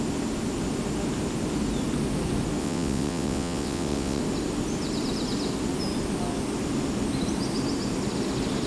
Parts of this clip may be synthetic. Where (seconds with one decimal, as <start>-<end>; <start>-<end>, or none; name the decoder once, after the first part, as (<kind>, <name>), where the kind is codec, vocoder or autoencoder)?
2.6-4.2 (vocoder, WaveNeXt)

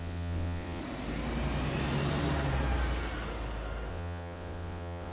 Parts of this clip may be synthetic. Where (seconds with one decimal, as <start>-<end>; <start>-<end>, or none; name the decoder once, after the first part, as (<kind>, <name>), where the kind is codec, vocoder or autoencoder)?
0.0-0.8 (vocoder, WaveNeXt); 3.9-5.1

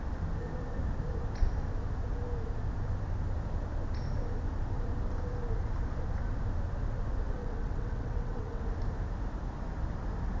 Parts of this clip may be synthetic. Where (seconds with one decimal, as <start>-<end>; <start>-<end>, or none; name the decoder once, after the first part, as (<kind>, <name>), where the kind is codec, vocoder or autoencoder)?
7.4-8.6 (vocoder, WaveNeXt)